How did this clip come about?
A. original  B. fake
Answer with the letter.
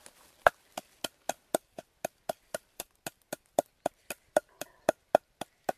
A